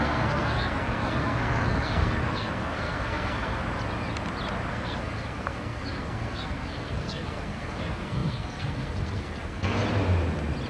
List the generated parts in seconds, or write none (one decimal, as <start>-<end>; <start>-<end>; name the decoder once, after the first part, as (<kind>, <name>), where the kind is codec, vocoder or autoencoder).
0.0-3.6 (codec, SNAC); 4.7-9.8